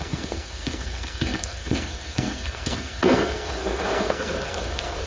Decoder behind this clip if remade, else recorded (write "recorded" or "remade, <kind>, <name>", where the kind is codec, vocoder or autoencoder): remade, codec, SNAC